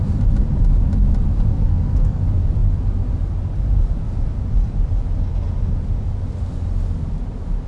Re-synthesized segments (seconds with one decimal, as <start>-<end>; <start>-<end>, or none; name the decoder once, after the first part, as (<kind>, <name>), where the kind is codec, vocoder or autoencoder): 1.5-2.2 (codec, SNAC)